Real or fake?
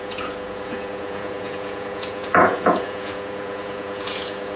fake